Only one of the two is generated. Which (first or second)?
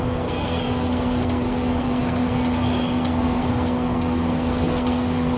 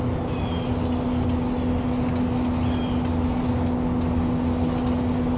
first